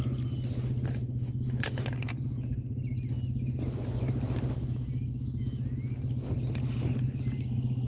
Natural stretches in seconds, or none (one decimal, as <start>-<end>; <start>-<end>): 0.0-7.9